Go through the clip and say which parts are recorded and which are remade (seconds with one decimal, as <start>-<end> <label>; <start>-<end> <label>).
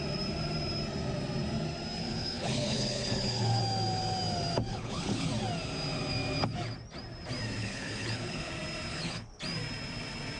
0.0-2.0 recorded; 2.0-3.6 remade; 3.6-4.7 recorded; 4.7-5.3 remade; 5.3-7.6 recorded; 7.6-8.5 remade; 8.5-8.9 recorded; 8.9-9.4 remade; 9.4-10.4 recorded